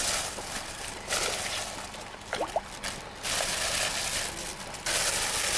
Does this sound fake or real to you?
real